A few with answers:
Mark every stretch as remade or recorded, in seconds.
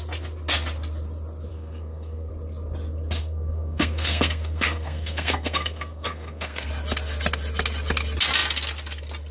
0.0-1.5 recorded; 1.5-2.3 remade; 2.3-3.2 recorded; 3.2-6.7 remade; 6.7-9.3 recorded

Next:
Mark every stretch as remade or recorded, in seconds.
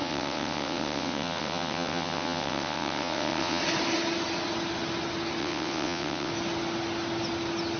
0.0-3.6 remade; 3.6-5.4 recorded; 5.4-6.3 remade; 6.3-7.8 recorded